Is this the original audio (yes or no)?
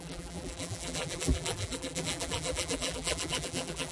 no